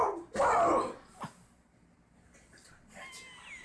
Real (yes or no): yes